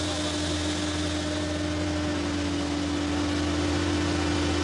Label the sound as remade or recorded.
recorded